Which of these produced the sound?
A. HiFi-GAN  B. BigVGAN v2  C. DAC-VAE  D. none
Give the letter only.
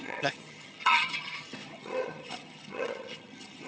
A